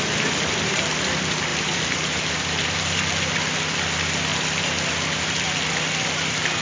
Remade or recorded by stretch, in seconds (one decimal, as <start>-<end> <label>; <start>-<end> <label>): 0.0-6.6 recorded